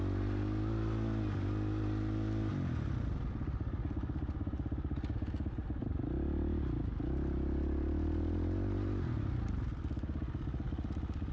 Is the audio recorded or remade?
recorded